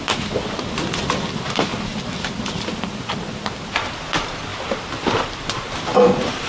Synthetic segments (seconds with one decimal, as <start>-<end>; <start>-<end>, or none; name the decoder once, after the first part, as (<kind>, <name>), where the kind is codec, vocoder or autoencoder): 0.0-1.7 (vocoder, BigVGAN v2); 3.7-6.5